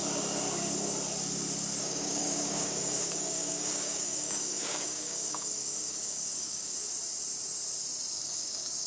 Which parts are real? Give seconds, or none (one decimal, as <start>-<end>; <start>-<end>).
0.0-1.8; 6.8-8.1